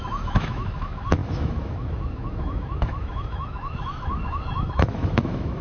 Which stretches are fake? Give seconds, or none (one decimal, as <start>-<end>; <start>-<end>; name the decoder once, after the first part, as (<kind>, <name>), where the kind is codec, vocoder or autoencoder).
0.0-5.6 (autoencoder, DAC-VAE)